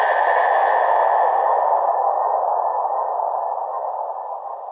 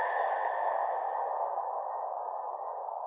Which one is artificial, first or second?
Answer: second